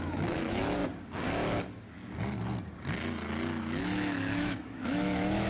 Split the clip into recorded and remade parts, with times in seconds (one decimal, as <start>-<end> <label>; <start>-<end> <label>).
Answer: 0.0-0.8 remade; 0.8-3.6 recorded; 3.6-5.5 remade